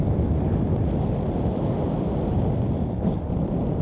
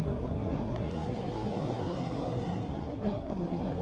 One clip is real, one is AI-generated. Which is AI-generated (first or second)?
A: second